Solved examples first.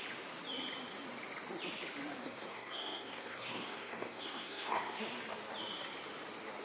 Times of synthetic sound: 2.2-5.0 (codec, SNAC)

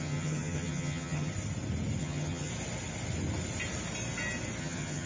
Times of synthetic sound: 0.0-1.3 (vocoder, HiFi-GAN); 2.0-2.5; 4.6-5.1